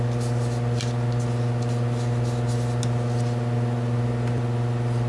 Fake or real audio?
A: real